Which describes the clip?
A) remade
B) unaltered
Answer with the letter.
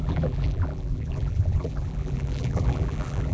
A